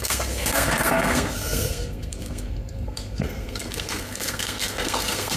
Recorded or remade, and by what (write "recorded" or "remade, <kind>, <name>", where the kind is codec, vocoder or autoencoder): remade, codec, SNAC